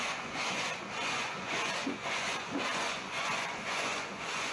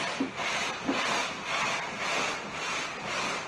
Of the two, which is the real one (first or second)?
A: second